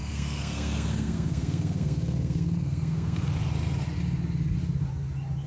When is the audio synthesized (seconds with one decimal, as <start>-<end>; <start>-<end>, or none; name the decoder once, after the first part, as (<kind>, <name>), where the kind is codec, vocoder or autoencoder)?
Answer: 0.0-3.3 (codec, SNAC)